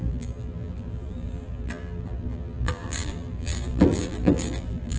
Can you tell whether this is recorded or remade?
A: remade